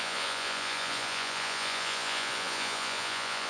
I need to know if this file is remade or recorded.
remade